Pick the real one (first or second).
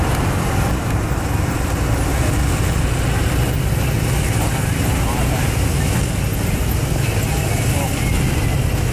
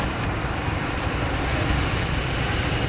first